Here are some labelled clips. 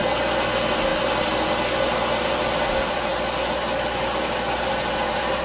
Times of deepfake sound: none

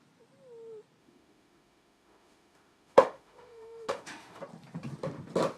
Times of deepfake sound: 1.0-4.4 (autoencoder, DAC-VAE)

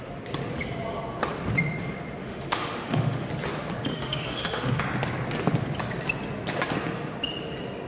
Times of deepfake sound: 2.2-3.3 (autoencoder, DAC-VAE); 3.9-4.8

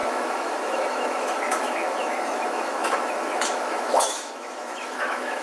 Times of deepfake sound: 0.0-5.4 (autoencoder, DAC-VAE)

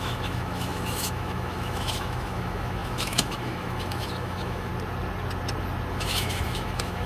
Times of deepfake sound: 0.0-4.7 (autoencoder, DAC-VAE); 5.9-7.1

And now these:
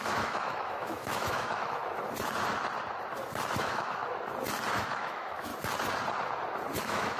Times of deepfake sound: 0.0-1.8 (autoencoder, DAC-VAE); 3.6-4.0; 4.7-5.5; 6.8-7.2